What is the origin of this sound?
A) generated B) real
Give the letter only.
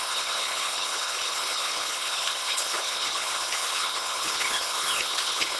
A